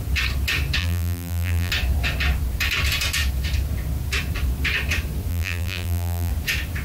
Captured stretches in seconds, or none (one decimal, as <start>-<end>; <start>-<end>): 0.0-0.8; 1.7-5.3; 6.3-6.8